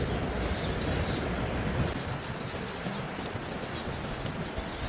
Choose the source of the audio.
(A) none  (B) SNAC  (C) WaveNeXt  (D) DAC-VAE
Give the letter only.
A